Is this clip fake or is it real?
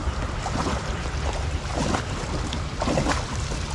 real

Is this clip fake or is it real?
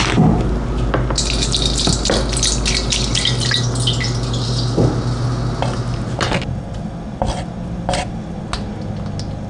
real